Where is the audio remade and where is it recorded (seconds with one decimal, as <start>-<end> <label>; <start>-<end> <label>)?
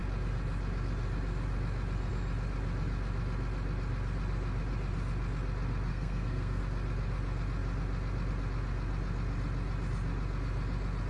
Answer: 0.0-5.9 recorded; 5.9-6.6 remade; 6.6-11.1 recorded